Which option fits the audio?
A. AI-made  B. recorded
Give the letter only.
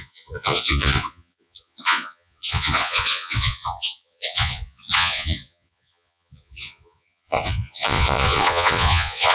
A